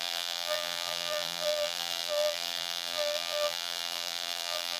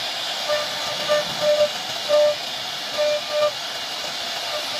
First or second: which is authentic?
second